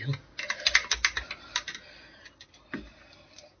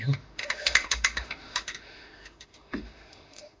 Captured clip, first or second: first